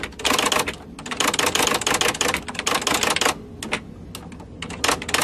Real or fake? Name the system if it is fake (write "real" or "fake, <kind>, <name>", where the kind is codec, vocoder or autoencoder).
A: real